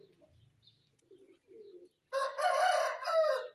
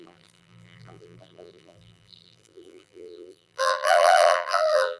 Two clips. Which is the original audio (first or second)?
first